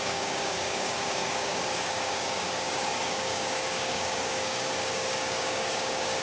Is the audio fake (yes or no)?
yes